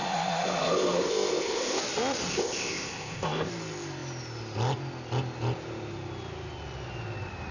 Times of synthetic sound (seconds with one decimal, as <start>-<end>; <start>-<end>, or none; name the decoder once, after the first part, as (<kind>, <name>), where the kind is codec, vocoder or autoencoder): 0.0-1.8 (codec, ZipCodec); 2.3-3.5